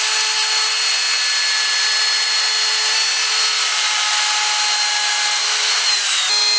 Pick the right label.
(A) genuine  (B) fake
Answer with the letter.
A